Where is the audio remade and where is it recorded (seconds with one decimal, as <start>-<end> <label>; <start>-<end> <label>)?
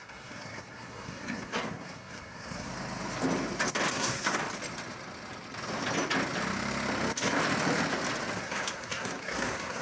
0.0-2.7 remade; 2.7-3.9 recorded; 3.9-4.4 remade; 4.4-8.4 recorded; 8.4-9.8 remade